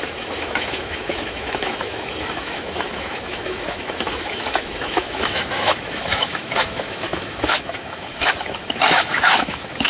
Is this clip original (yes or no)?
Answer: no